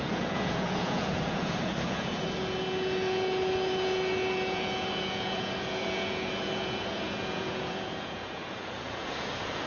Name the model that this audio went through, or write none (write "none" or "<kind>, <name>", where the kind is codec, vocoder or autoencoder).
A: vocoder, Vocos